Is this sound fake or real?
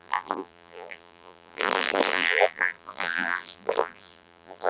fake